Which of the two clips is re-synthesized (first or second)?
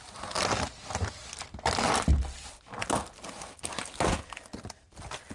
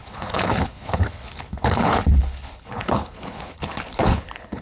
second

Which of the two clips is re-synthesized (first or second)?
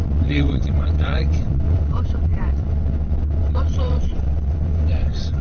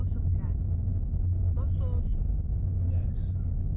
first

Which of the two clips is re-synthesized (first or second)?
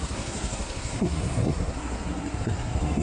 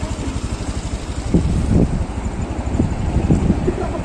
first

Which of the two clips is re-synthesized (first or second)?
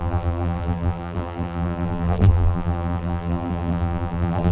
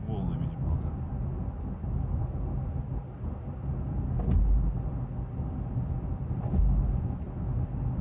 first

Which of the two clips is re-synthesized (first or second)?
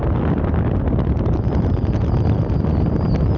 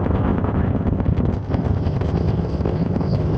second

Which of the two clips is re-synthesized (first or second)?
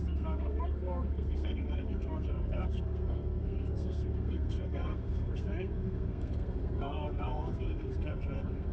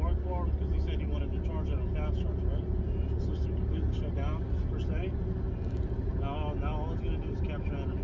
first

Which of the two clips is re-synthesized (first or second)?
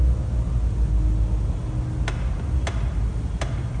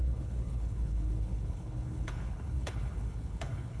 second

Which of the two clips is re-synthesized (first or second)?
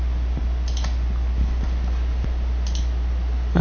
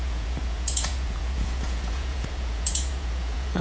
second